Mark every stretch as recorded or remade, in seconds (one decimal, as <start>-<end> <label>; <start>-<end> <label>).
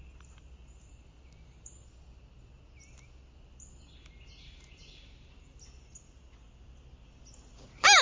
0.0-8.0 recorded